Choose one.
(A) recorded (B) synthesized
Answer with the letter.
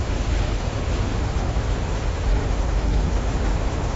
B